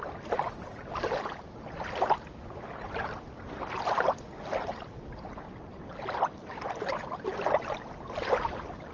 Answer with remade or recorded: recorded